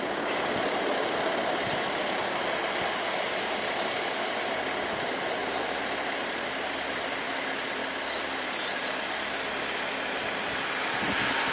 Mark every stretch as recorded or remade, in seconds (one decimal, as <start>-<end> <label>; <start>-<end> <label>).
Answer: 0.0-11.5 recorded